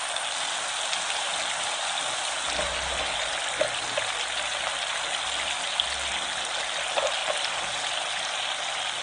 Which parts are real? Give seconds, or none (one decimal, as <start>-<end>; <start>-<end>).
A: 0.0-9.0